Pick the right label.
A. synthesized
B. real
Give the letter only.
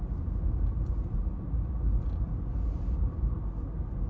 B